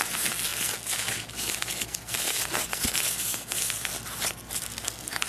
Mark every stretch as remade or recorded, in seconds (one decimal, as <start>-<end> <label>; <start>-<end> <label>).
0.0-3.9 remade; 3.9-4.7 recorded; 4.7-5.3 remade